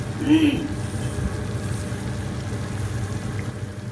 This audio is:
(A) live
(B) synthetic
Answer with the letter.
A